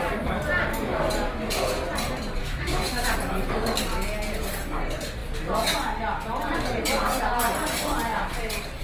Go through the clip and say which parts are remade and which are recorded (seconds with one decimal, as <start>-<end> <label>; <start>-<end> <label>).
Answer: 0.0-2.4 recorded; 2.4-3.1 remade; 3.1-8.8 recorded